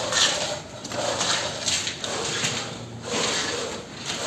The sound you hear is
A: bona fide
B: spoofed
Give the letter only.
A